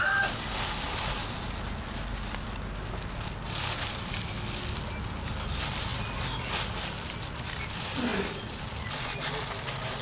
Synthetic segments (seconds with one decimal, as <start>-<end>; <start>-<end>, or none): none